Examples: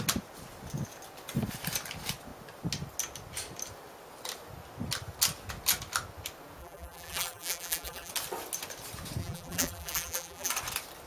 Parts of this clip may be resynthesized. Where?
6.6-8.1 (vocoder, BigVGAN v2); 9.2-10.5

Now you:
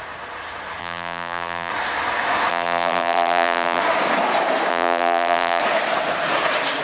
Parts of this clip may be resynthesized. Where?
0.8-1.7 (vocoder, BigVGAN v2); 2.5-3.8; 4.7-5.6

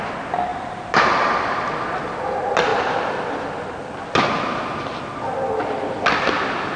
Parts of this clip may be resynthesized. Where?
0.5-2.3 (vocoder, BigVGAN v2)

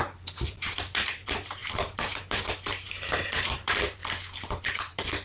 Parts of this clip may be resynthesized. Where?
0.0-4.0 (vocoder, BigVGAN v2); 4.6-5.2

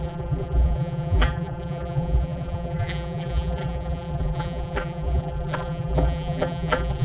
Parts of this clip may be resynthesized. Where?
0.0-7.0 (vocoder, BigVGAN v2)